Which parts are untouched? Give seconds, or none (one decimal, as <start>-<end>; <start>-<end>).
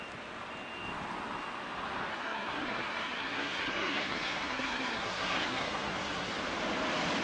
0.0-2.1; 6.4-7.2